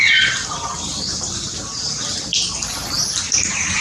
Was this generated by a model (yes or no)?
no